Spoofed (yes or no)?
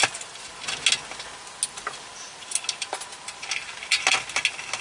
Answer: no